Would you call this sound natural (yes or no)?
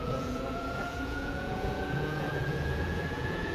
no